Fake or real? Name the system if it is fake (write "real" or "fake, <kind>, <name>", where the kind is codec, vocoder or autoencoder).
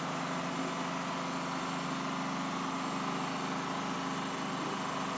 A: real